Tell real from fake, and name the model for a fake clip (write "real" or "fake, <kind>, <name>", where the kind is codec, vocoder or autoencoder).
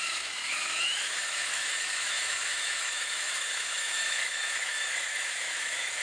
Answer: fake, autoencoder, DAC-VAE